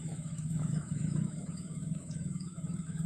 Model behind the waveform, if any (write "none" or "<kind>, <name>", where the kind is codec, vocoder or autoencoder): autoencoder, DAC-VAE